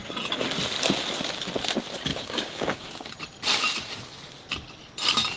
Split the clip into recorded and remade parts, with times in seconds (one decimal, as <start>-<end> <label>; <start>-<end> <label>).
0.0-2.1 recorded; 2.1-3.1 remade; 3.1-5.4 recorded